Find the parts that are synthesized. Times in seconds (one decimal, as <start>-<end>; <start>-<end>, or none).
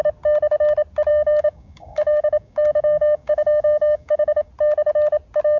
1.1-4.5